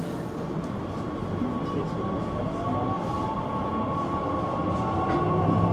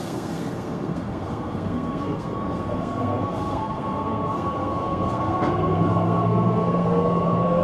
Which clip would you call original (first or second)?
first